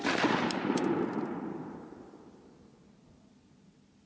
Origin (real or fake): real